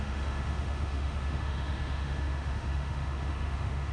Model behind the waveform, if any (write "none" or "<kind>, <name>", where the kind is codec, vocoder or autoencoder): autoencoder, DAC-VAE